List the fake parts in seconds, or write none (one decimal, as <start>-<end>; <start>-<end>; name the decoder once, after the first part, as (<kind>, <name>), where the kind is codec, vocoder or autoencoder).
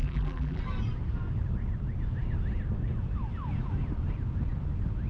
0.0-0.6 (vocoder, BigVGAN v2)